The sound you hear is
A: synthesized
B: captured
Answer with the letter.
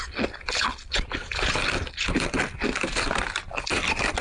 B